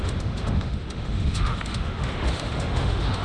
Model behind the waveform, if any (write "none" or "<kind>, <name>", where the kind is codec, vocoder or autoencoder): autoencoder, DAC-VAE